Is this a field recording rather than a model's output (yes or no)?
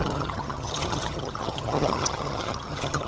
no